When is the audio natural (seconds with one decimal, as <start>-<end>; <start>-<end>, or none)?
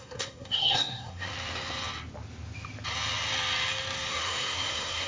1.3-4.1